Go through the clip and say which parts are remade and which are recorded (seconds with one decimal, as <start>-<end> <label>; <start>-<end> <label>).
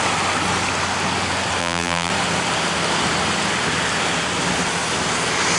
0.0-1.6 recorded; 1.6-2.1 remade; 2.1-5.6 recorded